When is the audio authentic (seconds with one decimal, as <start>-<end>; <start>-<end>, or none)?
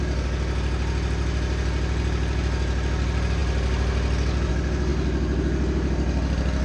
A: 0.0-6.6